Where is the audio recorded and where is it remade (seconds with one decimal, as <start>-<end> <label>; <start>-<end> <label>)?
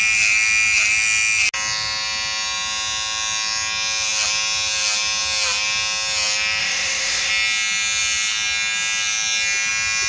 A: 0.0-6.6 recorded; 6.6-7.3 remade; 7.3-10.1 recorded